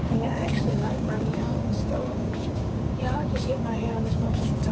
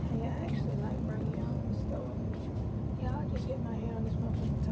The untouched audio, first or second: second